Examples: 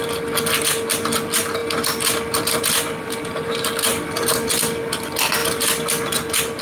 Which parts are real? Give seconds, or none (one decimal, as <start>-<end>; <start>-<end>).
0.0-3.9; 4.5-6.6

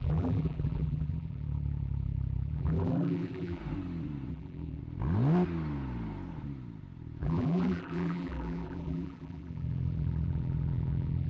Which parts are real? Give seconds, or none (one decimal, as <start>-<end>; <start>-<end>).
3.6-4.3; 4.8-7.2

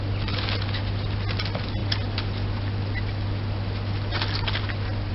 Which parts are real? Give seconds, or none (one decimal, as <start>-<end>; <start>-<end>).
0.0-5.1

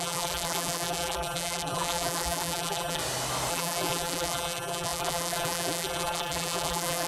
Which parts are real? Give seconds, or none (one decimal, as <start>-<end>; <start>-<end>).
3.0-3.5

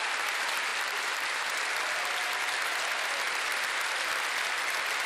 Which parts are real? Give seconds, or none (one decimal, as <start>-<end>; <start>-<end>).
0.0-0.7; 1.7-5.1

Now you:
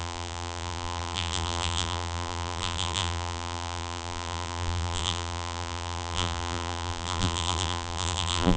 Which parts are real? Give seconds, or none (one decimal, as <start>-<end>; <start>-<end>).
none

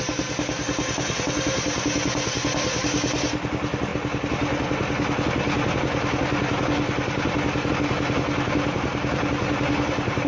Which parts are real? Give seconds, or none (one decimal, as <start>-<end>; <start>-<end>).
0.0-10.3